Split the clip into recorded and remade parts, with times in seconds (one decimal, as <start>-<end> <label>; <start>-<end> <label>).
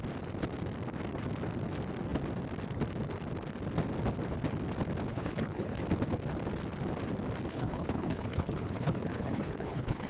0.0-5.1 recorded; 5.1-5.8 remade; 5.8-7.5 recorded; 7.5-10.1 remade